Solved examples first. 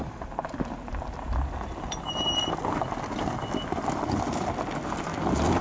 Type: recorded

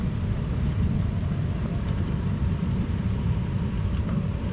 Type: remade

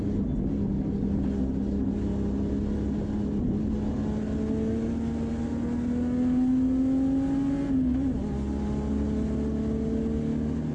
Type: recorded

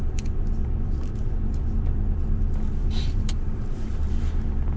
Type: remade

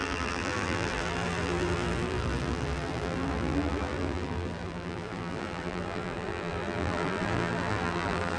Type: remade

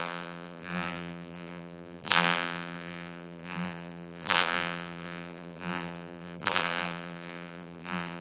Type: remade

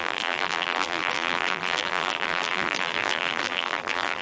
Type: remade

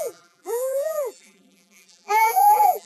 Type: remade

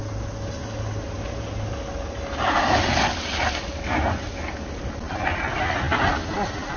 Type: recorded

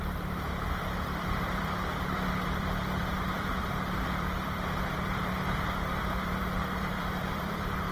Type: remade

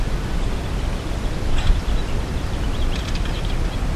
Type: recorded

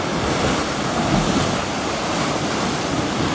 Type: recorded